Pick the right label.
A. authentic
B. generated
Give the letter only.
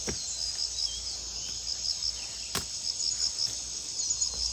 A